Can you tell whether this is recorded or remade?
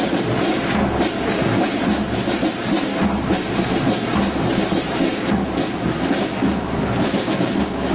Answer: recorded